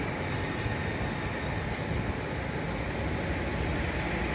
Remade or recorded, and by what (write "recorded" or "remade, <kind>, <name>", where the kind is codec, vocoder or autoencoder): recorded